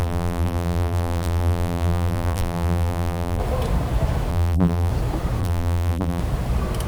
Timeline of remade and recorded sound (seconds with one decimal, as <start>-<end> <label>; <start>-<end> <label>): 0.0-3.4 remade; 3.4-4.3 recorded; 4.3-4.9 remade; 4.9-5.4 recorded; 5.4-6.2 remade; 6.2-6.9 recorded